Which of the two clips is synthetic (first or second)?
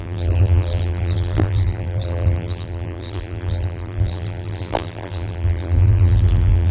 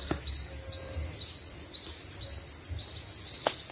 first